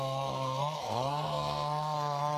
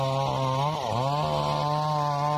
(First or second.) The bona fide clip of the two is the second